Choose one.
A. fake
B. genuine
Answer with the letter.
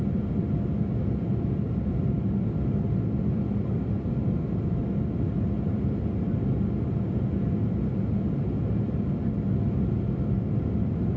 B